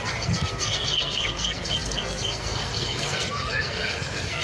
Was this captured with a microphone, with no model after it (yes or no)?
no